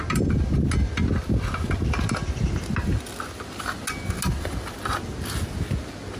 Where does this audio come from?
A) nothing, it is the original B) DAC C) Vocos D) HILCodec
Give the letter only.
A